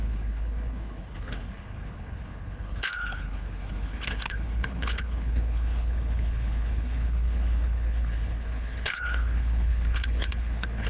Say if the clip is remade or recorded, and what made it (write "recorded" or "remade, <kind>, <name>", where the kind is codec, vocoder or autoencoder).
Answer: remade, codec, HILCodec